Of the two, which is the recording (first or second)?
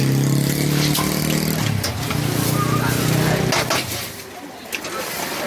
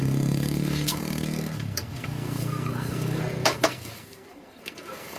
first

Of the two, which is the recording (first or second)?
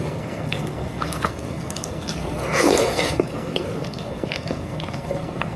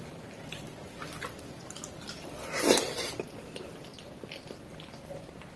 second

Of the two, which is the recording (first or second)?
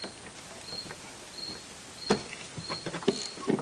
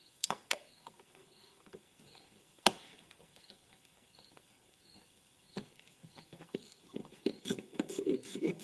first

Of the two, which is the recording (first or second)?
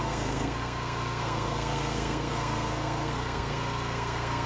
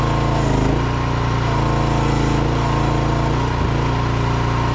second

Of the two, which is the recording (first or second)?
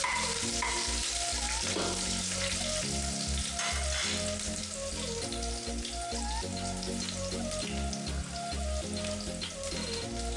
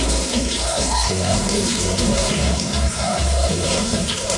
first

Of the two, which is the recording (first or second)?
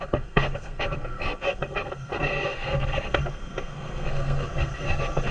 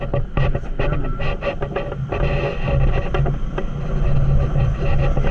second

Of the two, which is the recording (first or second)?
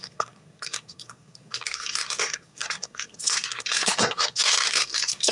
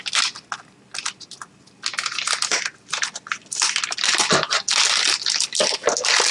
second